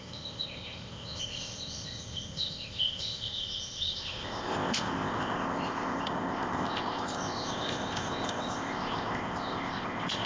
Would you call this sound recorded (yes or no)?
no